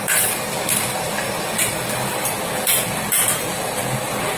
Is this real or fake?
real